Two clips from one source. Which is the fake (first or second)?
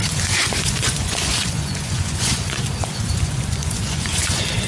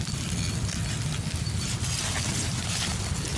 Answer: first